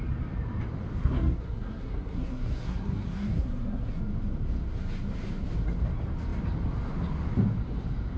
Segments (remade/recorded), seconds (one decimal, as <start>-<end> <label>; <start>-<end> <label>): 0.0-1.0 recorded; 1.0-4.0 remade; 4.0-8.2 recorded